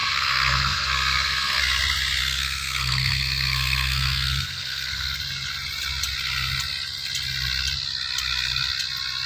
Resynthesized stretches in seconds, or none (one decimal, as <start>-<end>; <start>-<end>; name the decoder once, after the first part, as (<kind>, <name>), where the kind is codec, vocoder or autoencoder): 0.0-1.6 (codec, SNAC); 2.2-5.2

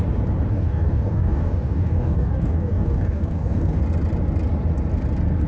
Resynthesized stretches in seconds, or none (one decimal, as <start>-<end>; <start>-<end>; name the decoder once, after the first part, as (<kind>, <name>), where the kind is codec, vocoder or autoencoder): 0.5-3.8 (codec, DAC)

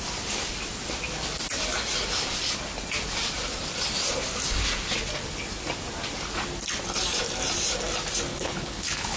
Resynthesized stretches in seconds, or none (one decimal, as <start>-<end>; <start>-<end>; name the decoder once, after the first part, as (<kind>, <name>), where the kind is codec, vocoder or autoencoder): 8.3-9.2 (codec, HILCodec)

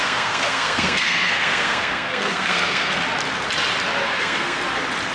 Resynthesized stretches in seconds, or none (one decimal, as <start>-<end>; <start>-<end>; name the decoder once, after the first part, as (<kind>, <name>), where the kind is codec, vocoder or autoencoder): 0.0-3.0 (codec, SNAC); 4.0-4.6

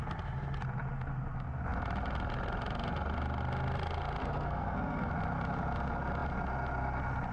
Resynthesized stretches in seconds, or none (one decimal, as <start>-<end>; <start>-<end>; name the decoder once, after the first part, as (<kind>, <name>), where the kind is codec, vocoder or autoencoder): 4.2-5.1 (codec, SNAC)